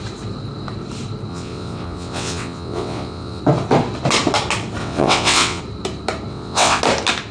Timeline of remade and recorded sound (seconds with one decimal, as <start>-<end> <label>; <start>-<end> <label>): 0.0-1.3 recorded; 1.3-3.4 remade; 3.4-4.8 recorded; 4.8-5.6 remade; 5.6-6.3 recorded; 6.3-6.8 remade; 6.8-7.3 recorded